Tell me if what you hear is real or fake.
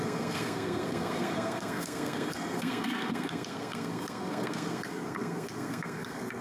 fake